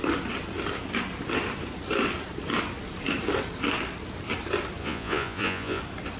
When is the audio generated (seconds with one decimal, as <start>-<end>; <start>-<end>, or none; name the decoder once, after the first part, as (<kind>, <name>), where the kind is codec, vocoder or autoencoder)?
4.8-5.8 (vocoder, Vocos)